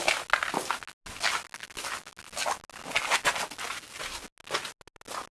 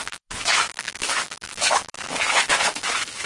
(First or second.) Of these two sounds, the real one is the first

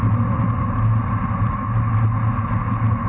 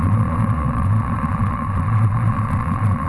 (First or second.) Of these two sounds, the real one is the first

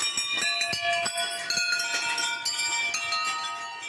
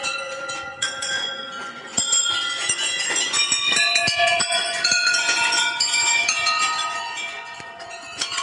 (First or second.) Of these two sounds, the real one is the first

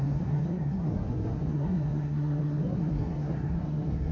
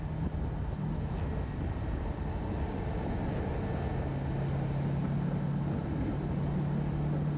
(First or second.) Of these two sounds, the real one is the second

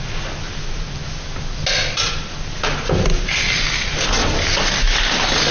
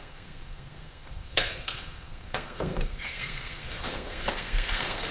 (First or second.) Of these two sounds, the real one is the first